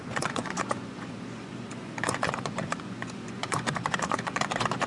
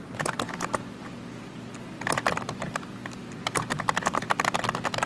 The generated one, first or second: first